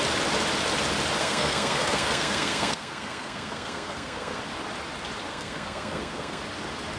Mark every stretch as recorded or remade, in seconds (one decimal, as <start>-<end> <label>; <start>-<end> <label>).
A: 0.0-1.2 recorded; 1.2-4.4 remade; 4.4-5.3 recorded; 5.3-6.4 remade; 6.4-7.0 recorded